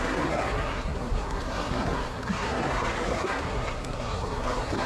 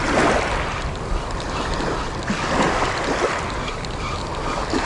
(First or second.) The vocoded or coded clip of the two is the first